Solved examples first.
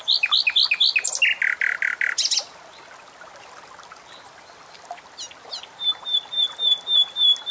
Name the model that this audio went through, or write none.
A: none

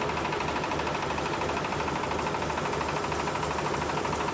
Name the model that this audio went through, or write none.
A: none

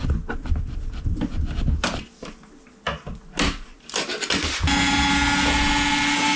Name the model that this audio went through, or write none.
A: none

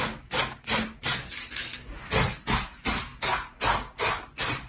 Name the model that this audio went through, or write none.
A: none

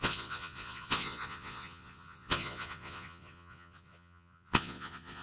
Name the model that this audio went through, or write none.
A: vocoder, Vocos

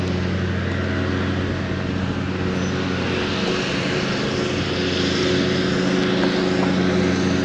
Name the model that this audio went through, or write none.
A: none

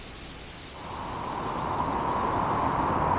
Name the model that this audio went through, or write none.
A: none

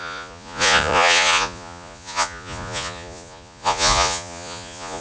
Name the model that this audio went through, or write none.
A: vocoder, Vocos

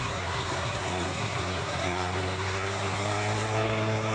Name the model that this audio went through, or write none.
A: codec, SNAC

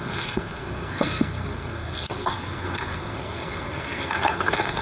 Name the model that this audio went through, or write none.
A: codec, SNAC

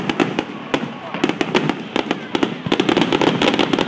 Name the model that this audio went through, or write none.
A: none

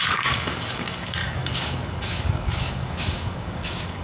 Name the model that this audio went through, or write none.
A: codec, DAC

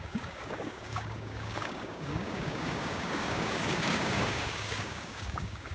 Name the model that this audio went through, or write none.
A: codec, DAC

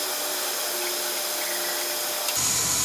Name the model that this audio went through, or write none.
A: none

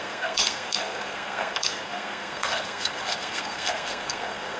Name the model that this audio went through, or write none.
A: codec, SNAC